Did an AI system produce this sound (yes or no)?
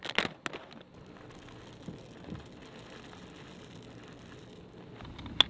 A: no